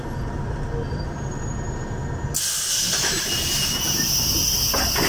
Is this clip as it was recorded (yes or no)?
yes